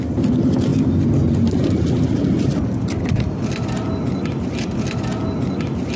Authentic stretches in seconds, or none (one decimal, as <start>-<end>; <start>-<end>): 0.0-6.0